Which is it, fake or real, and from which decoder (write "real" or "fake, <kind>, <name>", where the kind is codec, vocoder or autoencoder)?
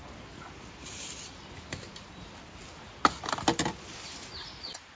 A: real